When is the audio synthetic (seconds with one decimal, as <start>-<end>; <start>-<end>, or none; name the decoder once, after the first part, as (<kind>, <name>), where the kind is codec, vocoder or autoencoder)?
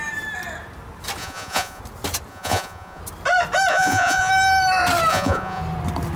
1.2-1.8 (vocoder, Vocos); 2.3-3.0; 3.7-4.3; 5.1-5.6